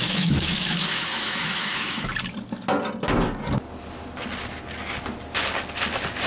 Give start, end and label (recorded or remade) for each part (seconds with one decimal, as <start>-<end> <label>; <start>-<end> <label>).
0.0-2.1 remade; 2.1-6.3 recorded